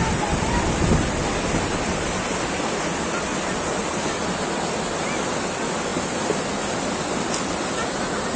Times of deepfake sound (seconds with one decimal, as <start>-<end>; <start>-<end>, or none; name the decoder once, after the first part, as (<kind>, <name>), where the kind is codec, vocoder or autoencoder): none